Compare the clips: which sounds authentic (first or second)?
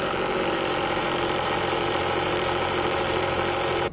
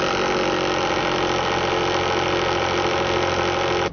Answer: second